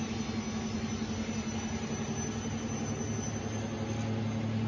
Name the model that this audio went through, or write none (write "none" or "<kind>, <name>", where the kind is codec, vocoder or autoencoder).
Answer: none